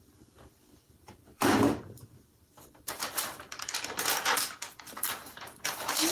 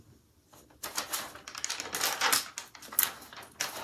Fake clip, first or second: first